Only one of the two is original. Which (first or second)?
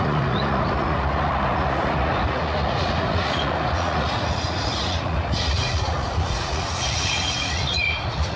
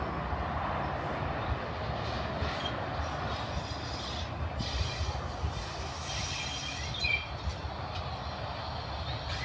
second